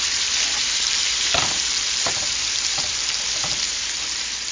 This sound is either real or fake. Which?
fake